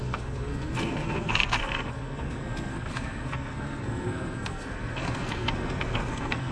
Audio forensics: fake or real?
fake